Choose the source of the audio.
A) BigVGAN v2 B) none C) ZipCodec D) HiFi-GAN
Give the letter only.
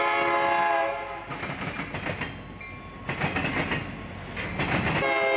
B